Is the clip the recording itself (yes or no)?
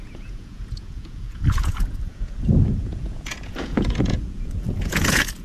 no